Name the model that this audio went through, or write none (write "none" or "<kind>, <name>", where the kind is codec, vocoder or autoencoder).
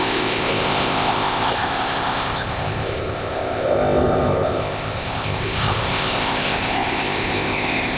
codec, ZipCodec